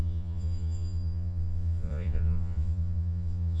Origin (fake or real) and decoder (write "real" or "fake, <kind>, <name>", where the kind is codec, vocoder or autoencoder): fake, vocoder, Vocos